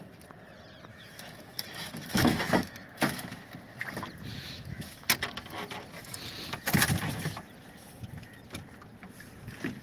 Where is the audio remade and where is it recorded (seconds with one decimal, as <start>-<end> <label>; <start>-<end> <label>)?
0.0-0.9 recorded; 0.9-3.5 remade; 3.5-4.3 recorded; 4.3-5.0 remade; 5.0-9.8 recorded